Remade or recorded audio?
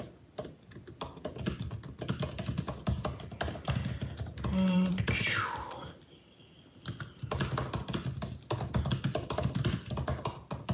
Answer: recorded